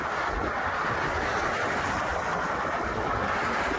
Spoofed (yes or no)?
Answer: no